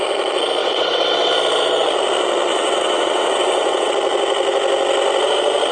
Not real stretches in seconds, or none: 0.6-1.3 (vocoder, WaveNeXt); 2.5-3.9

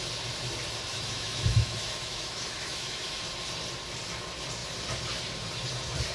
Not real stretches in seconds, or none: 0.9-3.2 (autoencoder, DAC-VAE)

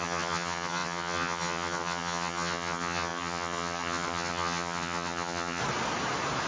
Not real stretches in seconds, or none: 0.0-5.6 (vocoder, HiFi-GAN)

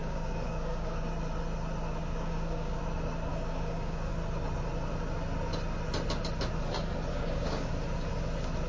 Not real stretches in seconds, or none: 0.0-1.1 (codec, DAC); 2.0-2.8; 3.3-4.1; 7.1-7.7